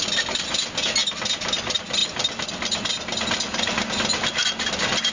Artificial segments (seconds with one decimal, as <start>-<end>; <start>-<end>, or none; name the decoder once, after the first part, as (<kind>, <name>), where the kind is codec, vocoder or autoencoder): none